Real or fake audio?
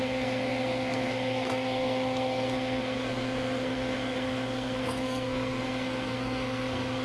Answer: fake